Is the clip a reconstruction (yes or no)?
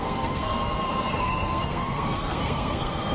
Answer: yes